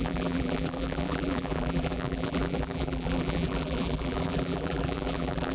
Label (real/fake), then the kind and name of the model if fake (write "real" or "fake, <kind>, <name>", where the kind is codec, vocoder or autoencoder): fake, vocoder, BigVGAN v2